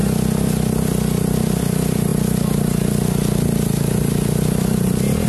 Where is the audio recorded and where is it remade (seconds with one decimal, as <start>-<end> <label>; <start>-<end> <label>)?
0.0-5.3 recorded